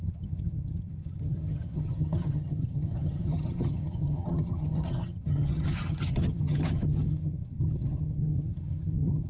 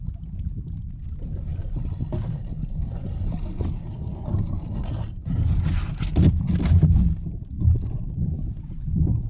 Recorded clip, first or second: second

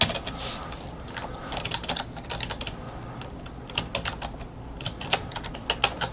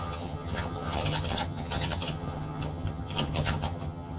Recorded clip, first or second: first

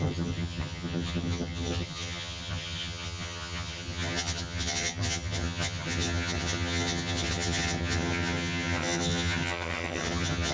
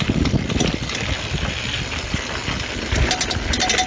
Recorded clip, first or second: second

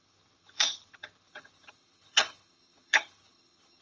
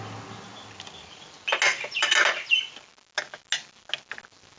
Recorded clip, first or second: second